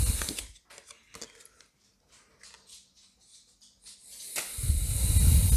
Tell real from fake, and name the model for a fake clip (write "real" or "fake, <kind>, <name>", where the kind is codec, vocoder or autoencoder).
real